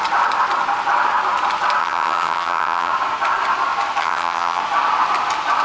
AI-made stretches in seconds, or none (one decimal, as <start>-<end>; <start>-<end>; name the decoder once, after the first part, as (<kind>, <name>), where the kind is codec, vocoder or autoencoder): 1.8-2.9 (vocoder, HiFi-GAN); 4.0-4.6